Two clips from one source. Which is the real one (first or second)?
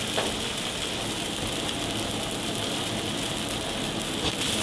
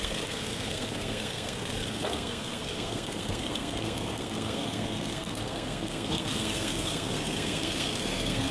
first